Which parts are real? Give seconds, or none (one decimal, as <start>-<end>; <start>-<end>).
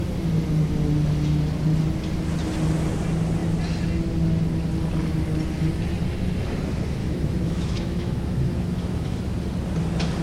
0.0-7.0; 9.2-10.2